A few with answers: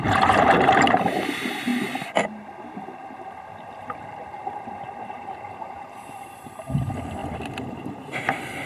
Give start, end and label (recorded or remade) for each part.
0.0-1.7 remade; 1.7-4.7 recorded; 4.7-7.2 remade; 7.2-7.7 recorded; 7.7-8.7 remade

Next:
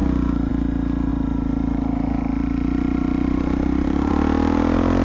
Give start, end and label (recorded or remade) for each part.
0.0-1.1 recorded; 1.1-4.1 remade; 4.1-5.0 recorded

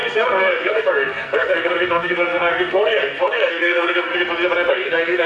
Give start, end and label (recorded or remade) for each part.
0.0-4.1 remade; 4.1-4.7 recorded; 4.7-5.3 remade

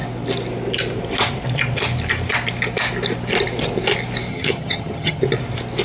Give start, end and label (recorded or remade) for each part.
0.0-4.3 recorded; 4.3-5.2 remade; 5.2-5.8 recorded